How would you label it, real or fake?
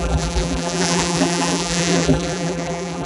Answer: fake